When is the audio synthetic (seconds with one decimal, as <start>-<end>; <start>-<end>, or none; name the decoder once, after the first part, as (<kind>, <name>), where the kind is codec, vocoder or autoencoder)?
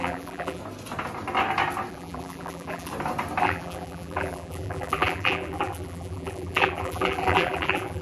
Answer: 0.0-0.6 (vocoder, BigVGAN v2); 1.9-2.9; 3.4-8.0